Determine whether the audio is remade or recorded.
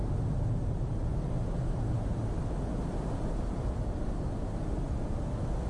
recorded